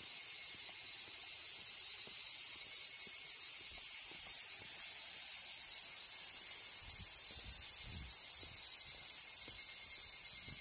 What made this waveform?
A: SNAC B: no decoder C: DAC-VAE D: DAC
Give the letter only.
B